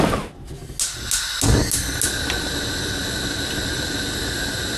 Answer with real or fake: real